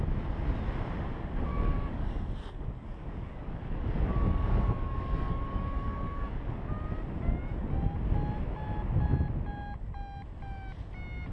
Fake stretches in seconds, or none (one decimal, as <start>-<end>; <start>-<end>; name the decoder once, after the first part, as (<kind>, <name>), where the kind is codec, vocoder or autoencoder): 1.5-6.7 (codec, DAC)